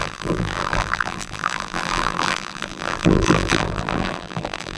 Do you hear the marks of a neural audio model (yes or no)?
yes